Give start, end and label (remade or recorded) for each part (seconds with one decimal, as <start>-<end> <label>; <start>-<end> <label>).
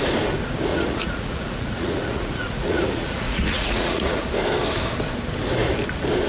0.0-0.7 recorded; 0.7-4.2 remade; 4.2-6.3 recorded